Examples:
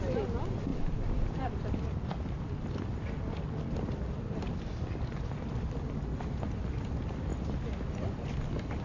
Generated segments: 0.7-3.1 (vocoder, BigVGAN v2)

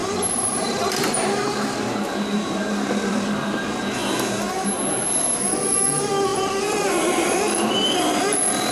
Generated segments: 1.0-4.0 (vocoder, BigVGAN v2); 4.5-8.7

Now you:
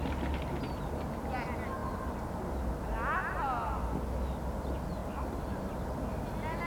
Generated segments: 1.8-2.5 (vocoder, BigVGAN v2); 3.2-3.8; 5.0-5.9

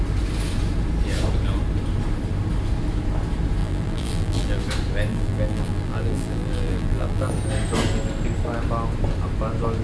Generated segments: 3.6-4.6 (vocoder, BigVGAN v2); 5.1-7.3

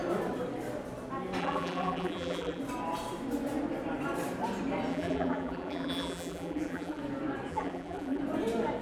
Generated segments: 1.4-2.6 (vocoder, BigVGAN v2); 4.9-7.0; 7.5-8.2